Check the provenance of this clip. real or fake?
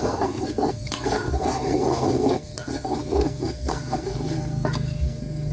fake